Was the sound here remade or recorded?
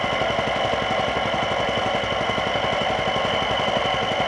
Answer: recorded